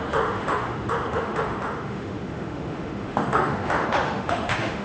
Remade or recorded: remade